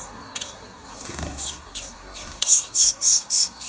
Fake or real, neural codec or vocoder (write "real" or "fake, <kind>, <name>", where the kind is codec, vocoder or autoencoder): fake, codec, SNAC